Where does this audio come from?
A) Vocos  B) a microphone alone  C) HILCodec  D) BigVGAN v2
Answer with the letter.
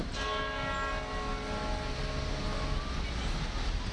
B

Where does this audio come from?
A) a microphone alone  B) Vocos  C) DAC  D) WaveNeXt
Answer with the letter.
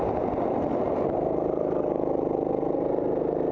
A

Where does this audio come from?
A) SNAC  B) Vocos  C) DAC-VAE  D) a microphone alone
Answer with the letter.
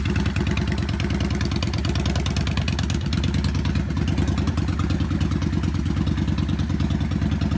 D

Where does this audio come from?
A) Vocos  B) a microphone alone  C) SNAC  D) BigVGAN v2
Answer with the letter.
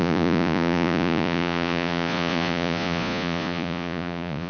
A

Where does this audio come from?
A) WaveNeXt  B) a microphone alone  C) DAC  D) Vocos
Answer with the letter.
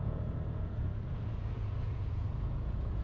D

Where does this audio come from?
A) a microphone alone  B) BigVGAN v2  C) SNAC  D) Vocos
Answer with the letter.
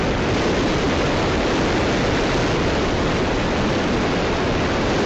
A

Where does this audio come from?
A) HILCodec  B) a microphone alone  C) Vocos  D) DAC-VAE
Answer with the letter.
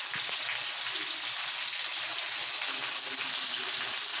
B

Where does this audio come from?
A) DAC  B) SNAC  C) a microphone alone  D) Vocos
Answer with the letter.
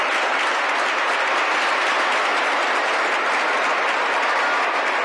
C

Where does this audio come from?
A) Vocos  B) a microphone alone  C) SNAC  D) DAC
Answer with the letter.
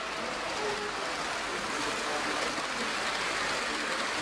B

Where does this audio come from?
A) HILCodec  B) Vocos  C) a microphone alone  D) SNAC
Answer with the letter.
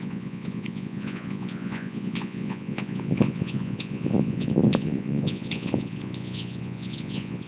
B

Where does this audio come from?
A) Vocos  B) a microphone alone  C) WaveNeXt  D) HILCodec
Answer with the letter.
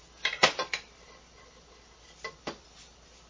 B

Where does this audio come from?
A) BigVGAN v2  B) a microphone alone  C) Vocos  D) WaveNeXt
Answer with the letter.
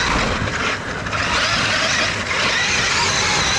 B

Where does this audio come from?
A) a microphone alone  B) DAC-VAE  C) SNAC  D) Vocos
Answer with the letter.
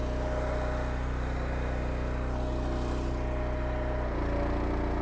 A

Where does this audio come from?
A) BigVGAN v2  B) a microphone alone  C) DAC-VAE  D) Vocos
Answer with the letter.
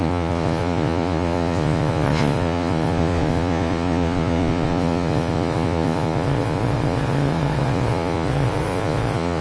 D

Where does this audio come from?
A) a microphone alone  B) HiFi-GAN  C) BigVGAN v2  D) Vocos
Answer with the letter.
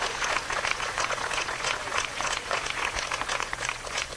D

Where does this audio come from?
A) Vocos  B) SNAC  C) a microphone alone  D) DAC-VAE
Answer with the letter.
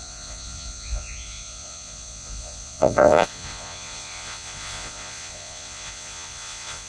A